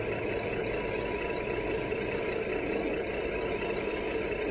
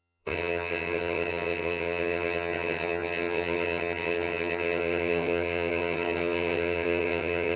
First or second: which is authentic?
first